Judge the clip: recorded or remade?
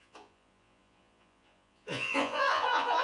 remade